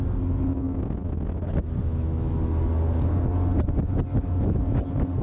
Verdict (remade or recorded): recorded